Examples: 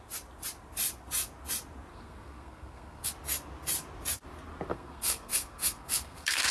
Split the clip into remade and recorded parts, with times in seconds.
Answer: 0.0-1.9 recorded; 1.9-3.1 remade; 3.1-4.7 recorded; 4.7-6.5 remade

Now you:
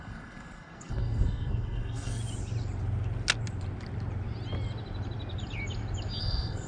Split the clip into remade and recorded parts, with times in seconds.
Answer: 0.0-2.2 remade; 2.2-6.2 recorded; 6.2-6.7 remade

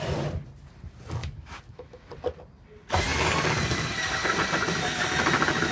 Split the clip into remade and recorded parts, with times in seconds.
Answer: 0.0-1.2 recorded; 1.2-2.1 remade; 2.1-5.7 recorded

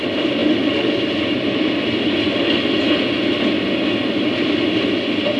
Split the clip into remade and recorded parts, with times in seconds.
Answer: 0.0-5.4 recorded

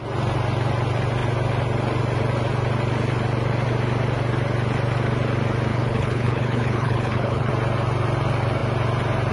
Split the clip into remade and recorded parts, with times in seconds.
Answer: 0.0-5.7 recorded; 5.7-7.5 remade; 7.5-9.3 recorded